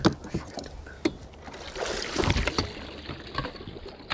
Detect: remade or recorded recorded